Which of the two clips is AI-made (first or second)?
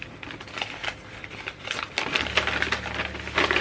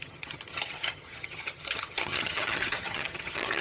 second